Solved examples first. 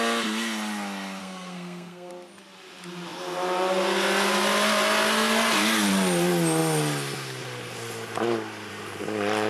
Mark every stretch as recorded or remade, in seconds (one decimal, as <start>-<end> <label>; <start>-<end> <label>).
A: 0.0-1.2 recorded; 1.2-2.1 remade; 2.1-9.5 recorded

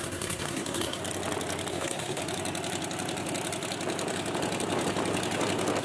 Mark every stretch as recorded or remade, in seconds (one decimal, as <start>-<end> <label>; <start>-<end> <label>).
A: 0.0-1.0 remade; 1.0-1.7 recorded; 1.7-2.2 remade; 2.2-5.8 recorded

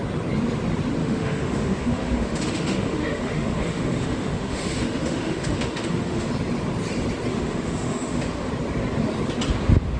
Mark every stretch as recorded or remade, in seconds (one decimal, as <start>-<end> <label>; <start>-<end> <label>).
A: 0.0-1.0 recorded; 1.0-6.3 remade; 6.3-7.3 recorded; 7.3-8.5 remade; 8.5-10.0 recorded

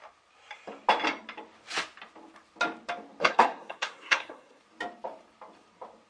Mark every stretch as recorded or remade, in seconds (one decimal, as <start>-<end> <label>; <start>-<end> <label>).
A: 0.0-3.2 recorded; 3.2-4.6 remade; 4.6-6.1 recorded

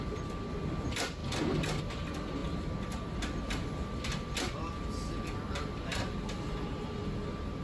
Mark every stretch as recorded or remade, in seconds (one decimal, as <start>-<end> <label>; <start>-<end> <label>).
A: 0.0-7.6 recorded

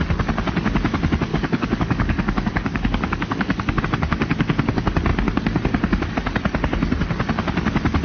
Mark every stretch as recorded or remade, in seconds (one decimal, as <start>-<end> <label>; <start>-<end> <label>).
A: 0.0-1.3 recorded; 1.3-3.8 remade; 3.8-8.0 recorded